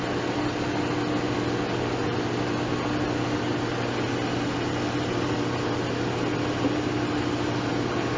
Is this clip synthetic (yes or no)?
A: no